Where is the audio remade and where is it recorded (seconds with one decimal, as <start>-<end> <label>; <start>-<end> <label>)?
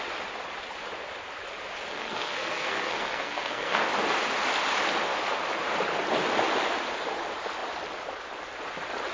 0.0-1.9 recorded; 1.9-3.8 remade; 3.8-9.1 recorded